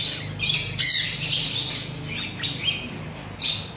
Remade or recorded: recorded